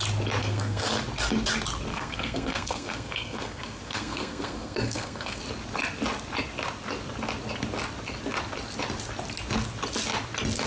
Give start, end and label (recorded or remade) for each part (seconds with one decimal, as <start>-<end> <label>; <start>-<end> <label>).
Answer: 0.0-0.4 recorded; 0.4-0.9 remade; 0.9-1.9 recorded; 1.9-5.4 remade; 5.4-10.7 recorded